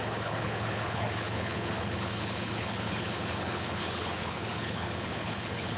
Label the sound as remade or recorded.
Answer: remade